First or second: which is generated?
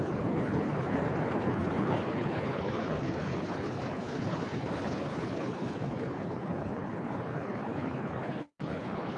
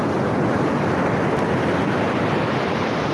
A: first